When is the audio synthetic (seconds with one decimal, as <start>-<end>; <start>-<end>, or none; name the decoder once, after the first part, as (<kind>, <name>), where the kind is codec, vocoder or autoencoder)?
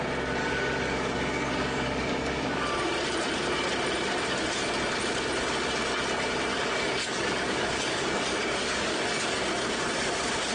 0.4-2.9 (codec, DAC); 6.5-9.4